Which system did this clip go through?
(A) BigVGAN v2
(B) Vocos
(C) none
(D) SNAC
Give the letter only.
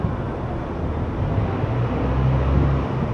C